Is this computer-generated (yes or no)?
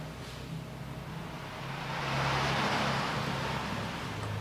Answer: no